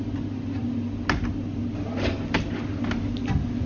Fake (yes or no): no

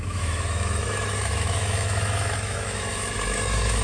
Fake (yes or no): yes